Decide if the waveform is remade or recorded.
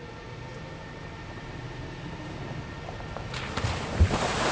recorded